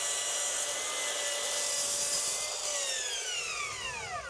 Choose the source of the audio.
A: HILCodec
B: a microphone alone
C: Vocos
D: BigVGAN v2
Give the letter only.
B